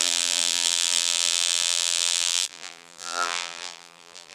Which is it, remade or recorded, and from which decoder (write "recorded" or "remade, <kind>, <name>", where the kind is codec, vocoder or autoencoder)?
remade, vocoder, BigVGAN v2